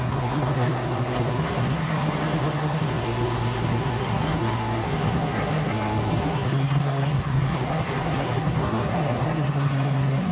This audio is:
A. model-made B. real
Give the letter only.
A